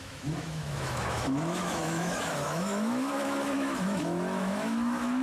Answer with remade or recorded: remade